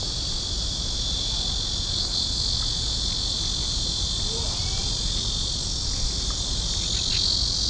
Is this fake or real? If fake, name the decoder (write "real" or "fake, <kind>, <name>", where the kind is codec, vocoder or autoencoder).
real